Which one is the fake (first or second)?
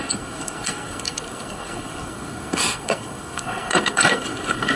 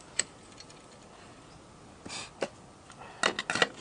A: first